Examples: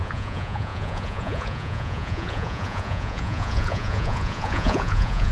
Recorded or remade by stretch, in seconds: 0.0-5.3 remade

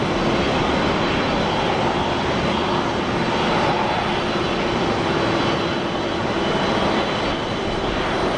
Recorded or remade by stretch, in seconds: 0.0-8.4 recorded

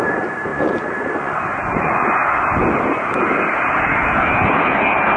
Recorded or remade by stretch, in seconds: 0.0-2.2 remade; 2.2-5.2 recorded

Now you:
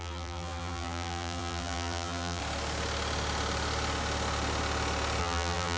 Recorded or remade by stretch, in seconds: 0.0-2.4 remade; 2.4-5.2 recorded; 5.2-5.8 remade

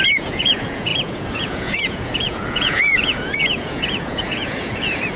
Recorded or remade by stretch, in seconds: 0.0-5.2 remade